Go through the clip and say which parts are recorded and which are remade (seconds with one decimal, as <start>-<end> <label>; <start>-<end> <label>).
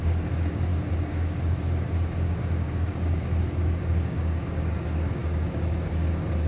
0.0-6.5 remade